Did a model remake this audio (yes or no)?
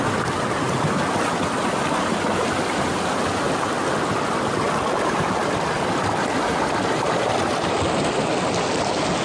no